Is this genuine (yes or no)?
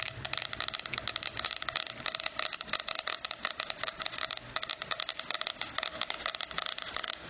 yes